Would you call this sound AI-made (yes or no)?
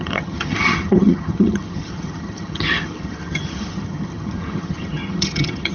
yes